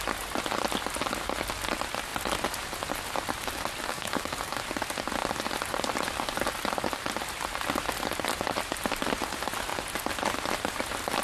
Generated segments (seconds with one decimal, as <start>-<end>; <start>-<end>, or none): 3.9-4.6